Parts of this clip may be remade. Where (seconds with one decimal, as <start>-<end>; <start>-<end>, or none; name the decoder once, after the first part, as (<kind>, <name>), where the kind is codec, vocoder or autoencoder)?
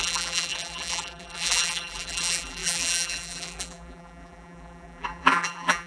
0.0-5.9 (vocoder, BigVGAN v2)